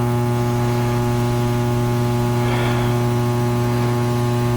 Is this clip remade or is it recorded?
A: recorded